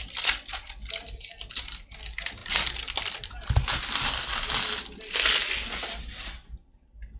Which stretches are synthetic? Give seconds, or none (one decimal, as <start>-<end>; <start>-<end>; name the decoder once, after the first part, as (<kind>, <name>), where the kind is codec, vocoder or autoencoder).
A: none